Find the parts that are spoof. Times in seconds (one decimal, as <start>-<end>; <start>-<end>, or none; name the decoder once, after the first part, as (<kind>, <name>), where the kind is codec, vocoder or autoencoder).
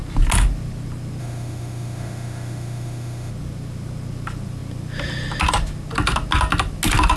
1.2-3.3 (autoencoder, DAC-VAE)